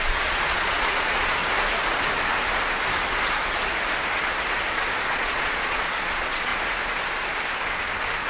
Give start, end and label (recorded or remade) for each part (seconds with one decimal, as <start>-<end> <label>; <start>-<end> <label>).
0.0-1.4 remade; 1.4-4.7 recorded; 4.7-6.5 remade; 6.5-8.3 recorded